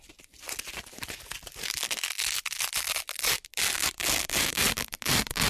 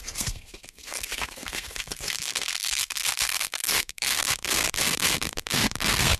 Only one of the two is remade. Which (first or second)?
second